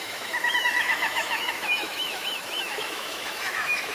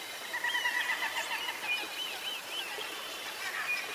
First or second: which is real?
second